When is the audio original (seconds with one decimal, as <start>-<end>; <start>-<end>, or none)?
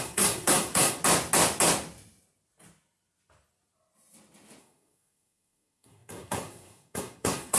1.0-4.6